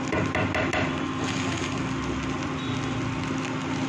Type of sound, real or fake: real